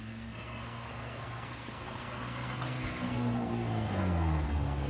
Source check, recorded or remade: remade